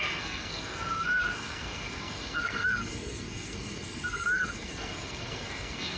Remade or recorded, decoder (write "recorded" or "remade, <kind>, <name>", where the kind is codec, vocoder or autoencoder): remade, codec, SNAC